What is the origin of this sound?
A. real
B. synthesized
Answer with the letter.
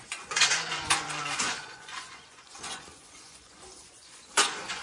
B